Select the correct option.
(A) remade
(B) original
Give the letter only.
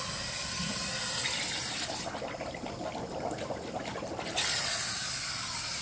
B